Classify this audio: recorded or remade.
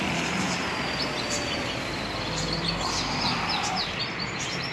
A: recorded